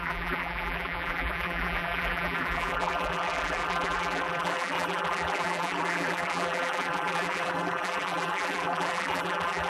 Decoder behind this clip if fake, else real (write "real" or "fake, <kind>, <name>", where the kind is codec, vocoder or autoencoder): fake, vocoder, BigVGAN v2